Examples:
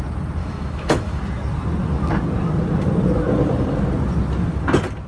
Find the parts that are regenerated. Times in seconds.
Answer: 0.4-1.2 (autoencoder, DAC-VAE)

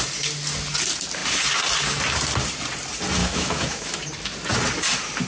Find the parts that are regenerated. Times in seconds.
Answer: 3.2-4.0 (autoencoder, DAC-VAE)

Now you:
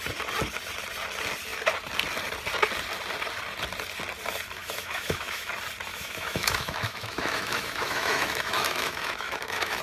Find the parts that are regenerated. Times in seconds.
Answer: 4.6-5.5 (autoencoder, DAC-VAE); 5.9-9.8